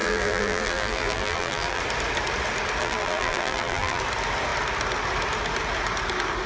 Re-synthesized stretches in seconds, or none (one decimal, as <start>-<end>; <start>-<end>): 0.0-1.8; 2.8-4.0